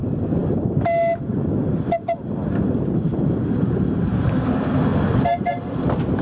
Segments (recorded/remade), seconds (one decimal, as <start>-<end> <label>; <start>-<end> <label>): 0.0-6.2 recorded